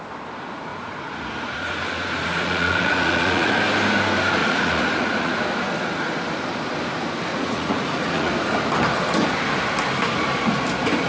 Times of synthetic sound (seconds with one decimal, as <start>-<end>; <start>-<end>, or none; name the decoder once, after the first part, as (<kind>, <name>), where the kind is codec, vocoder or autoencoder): 0.7-3.6 (vocoder, Vocos); 4.4-5.4; 7.3-8.3